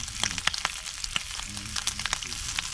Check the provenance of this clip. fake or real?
real